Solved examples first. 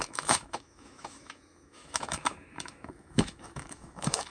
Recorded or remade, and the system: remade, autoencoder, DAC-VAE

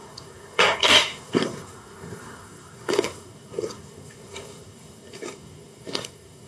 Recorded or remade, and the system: remade, codec, SNAC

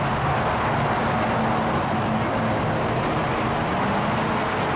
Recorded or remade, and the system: recorded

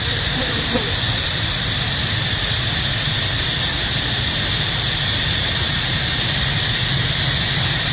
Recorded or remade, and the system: remade, vocoder, BigVGAN v2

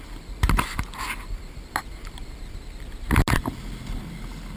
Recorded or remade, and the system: recorded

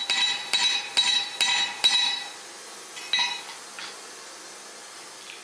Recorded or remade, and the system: recorded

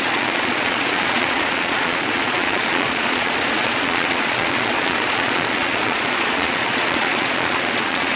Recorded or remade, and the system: remade, vocoder, Vocos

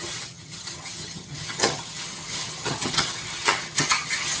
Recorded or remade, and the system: remade, vocoder, HiFi-GAN